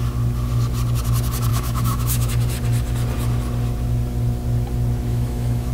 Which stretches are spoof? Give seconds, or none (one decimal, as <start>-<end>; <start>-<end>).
1.5-2.3; 5.1-5.7

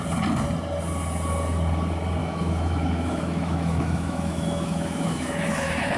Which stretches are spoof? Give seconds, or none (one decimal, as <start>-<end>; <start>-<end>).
2.2-6.0

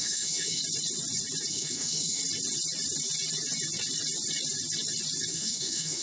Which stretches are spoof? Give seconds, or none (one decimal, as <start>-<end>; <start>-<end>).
0.0-0.6; 1.5-2.2; 5.3-6.0

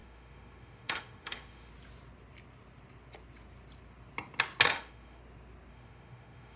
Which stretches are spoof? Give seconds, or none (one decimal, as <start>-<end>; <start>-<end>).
0.0-1.7; 4.7-5.2; 5.7-6.6

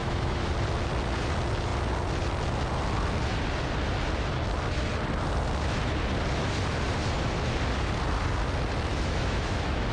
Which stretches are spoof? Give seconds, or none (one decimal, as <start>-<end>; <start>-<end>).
0.0-0.5; 8.9-9.9

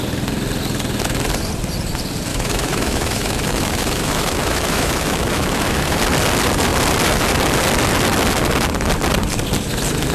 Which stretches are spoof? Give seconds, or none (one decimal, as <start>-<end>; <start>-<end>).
2.3-6.0